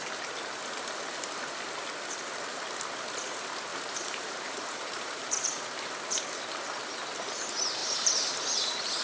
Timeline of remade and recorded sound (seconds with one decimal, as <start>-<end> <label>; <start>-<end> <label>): 0.0-3.7 recorded; 3.7-5.6 remade; 5.6-7.8 recorded; 7.8-8.5 remade; 8.5-9.0 recorded